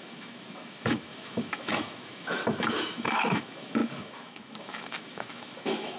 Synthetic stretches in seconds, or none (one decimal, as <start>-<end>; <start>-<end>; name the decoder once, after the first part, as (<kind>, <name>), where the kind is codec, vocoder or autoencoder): 0.0-6.0 (autoencoder, DAC-VAE)